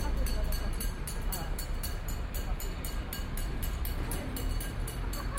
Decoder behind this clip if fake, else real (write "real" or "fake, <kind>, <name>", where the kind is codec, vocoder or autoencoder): real